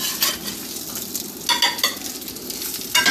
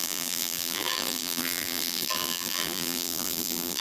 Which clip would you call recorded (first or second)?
first